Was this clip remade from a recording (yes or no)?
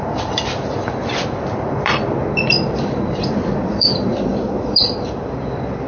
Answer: yes